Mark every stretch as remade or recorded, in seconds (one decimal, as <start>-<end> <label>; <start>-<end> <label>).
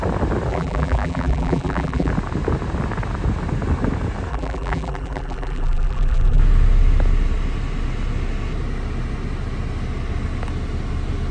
0.0-0.5 recorded; 0.5-2.1 remade; 2.1-4.3 recorded; 4.3-6.4 remade; 6.4-11.3 recorded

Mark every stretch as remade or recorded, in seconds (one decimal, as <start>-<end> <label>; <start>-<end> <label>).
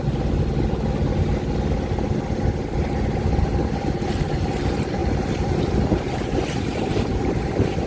0.0-5.0 recorded; 5.0-7.3 remade; 7.3-7.9 recorded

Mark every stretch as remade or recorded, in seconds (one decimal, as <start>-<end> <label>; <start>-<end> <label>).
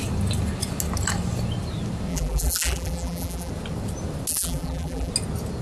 0.0-2.1 recorded; 2.1-3.5 remade; 3.5-4.3 recorded; 4.3-5.1 remade; 5.1-5.6 recorded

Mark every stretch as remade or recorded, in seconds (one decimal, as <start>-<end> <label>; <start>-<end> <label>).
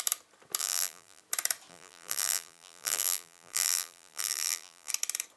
0.0-0.6 recorded; 0.6-1.2 remade; 1.2-1.7 recorded; 1.7-4.9 remade; 4.9-5.4 recorded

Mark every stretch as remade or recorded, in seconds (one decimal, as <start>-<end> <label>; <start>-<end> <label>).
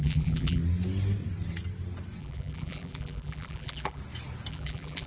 0.0-0.6 remade; 0.6-2.2 recorded; 2.2-4.0 remade; 4.0-4.5 recorded; 4.5-5.1 remade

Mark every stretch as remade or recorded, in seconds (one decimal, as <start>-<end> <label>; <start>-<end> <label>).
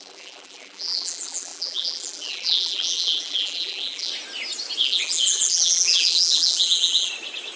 0.0-4.1 remade; 4.1-4.8 recorded; 4.8-7.1 remade; 7.1-7.6 recorded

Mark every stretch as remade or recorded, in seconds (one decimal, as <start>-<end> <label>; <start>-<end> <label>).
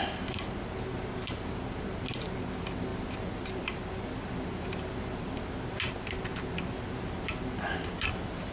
0.0-2.9 recorded; 2.9-5.4 remade; 5.4-6.3 recorded; 6.3-7.0 remade; 7.0-8.5 recorded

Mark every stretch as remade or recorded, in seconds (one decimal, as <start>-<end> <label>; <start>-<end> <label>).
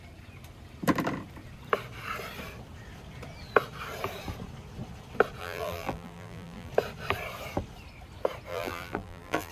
0.0-5.4 recorded; 5.4-6.7 remade; 6.7-8.5 recorded; 8.5-9.5 remade